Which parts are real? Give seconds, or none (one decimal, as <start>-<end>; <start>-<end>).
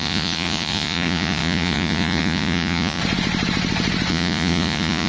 3.0-4.1